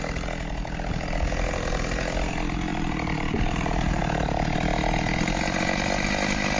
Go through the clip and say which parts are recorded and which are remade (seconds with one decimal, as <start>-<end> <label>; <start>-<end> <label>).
0.0-2.7 recorded; 2.7-4.0 remade; 4.0-6.6 recorded

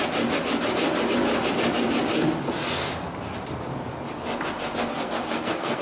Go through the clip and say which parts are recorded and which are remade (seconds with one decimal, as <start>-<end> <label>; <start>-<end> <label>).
0.0-4.9 recorded; 4.9-5.8 remade

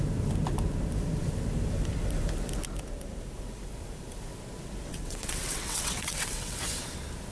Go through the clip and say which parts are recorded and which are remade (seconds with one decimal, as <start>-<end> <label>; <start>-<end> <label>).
0.0-4.9 recorded; 4.9-6.6 remade; 6.6-7.3 recorded